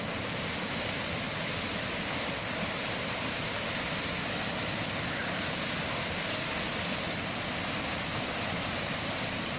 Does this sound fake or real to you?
real